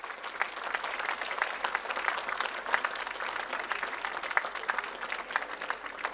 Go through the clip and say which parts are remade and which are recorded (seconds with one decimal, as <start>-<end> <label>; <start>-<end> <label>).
0.0-6.1 recorded